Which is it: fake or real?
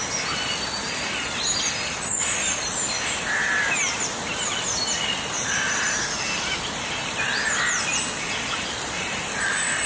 real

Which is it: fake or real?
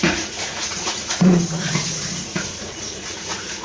fake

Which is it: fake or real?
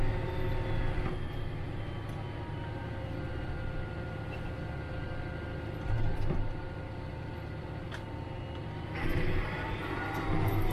real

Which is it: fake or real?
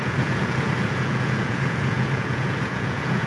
fake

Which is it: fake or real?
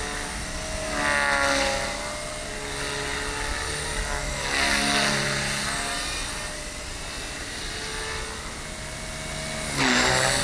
real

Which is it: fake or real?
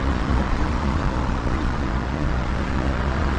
fake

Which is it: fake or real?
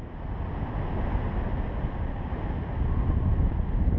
real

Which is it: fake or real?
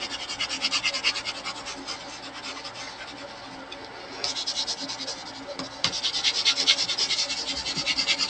real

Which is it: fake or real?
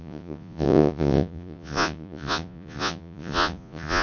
fake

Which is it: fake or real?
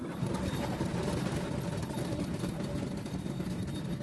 real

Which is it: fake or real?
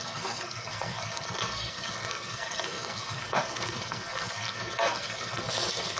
fake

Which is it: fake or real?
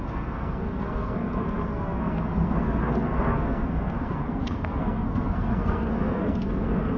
fake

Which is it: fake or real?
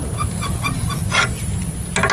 real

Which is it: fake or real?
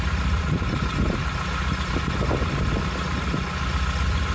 real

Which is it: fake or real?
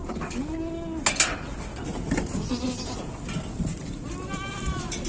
real